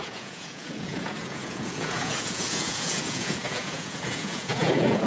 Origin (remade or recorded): remade